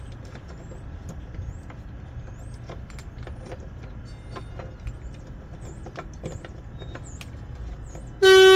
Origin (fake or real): real